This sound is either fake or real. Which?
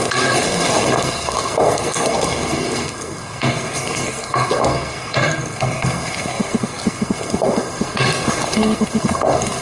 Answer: fake